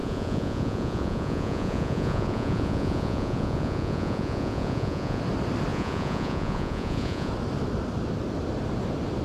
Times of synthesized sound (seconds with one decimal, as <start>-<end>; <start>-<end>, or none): 0.0-5.2; 5.7-7.3